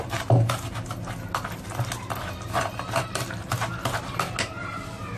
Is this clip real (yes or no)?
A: yes